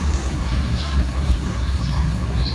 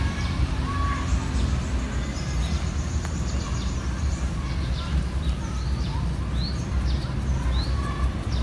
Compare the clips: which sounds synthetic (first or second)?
first